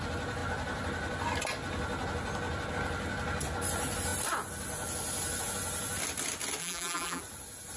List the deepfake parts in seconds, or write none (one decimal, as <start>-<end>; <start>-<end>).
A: 6.6-7.2